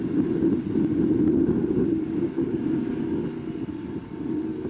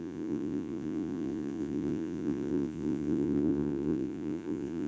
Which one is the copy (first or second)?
second